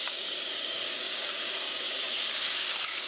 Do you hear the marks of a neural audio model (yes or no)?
yes